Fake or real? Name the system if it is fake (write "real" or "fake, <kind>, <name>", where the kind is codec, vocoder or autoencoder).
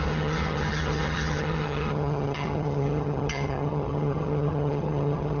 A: fake, vocoder, HiFi-GAN